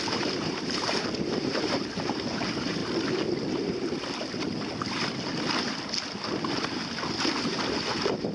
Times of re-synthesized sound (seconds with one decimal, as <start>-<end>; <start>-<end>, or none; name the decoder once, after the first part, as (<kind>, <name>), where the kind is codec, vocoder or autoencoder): 0.0-2.8 (vocoder, BigVGAN v2); 7.8-8.3